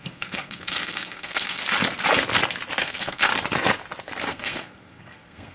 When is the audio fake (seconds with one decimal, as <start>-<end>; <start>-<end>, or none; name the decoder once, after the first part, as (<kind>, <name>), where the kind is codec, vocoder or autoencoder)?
0.0-1.6 (codec, SNAC); 2.8-3.3; 4.3-5.5